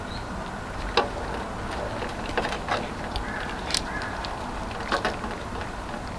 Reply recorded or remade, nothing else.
recorded